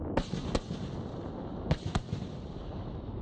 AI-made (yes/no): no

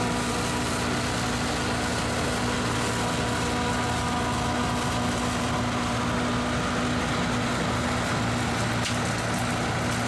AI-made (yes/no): no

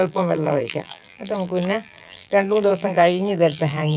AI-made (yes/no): yes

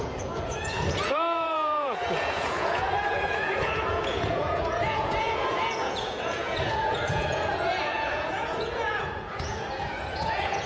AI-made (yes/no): yes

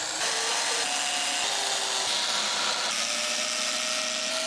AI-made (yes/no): no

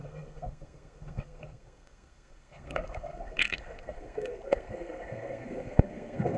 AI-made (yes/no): yes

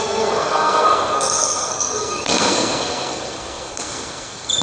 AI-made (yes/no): yes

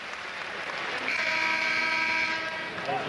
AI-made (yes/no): no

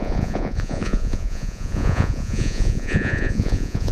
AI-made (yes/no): yes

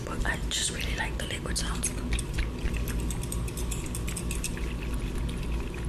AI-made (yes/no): no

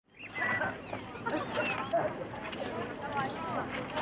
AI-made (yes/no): no